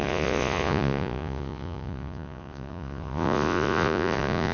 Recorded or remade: remade